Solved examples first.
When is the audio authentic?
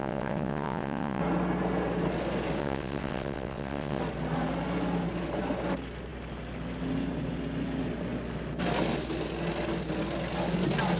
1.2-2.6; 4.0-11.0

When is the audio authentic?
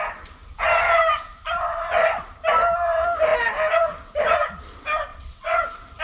0.0-5.1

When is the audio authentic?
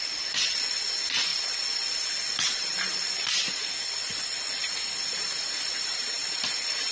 0.0-6.9